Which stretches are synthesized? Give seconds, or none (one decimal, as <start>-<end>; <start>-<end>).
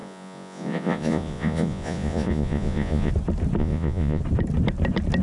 0.0-3.1; 3.6-4.2